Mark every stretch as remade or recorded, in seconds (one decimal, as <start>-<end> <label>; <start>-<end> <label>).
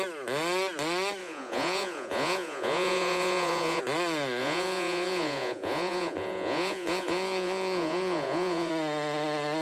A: 0.0-1.2 recorded; 1.2-3.8 remade; 3.8-4.4 recorded; 4.4-8.7 remade; 8.7-9.6 recorded